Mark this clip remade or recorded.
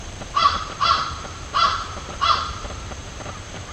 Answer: remade